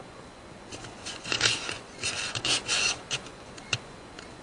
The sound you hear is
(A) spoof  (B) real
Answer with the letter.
A